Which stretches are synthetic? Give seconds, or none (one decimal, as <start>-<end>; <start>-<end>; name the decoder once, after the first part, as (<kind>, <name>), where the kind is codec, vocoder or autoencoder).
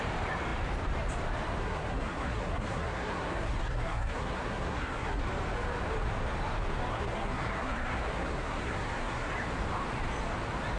1.6-5.2 (codec, SNAC); 6.9-9.3